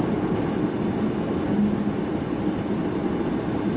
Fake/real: real